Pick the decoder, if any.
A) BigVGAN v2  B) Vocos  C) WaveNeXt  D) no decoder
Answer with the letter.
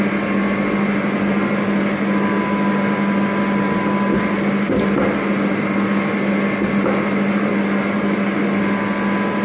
D